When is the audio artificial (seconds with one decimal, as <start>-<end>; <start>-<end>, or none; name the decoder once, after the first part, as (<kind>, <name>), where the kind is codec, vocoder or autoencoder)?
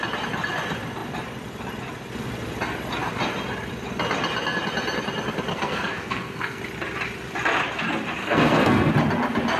5.5-6.6 (codec, SNAC); 8.2-8.9